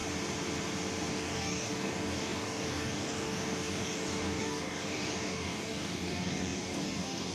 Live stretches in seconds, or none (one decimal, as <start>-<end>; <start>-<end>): 0.0-1.1

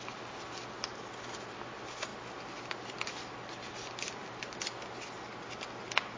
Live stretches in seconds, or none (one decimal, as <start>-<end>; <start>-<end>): 0.0-6.2

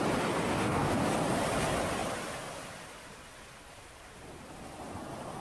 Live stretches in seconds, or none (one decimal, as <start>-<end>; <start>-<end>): 0.0-0.5; 1.1-5.4

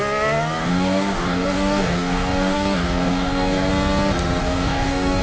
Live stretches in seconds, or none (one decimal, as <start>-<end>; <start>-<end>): 0.0-0.6; 3.7-4.4

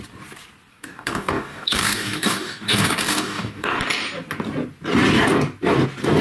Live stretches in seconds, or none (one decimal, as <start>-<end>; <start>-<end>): 0.0-0.7; 3.8-6.2

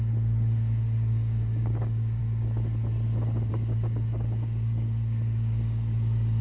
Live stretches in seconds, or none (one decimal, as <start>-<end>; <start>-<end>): 2.2-3.5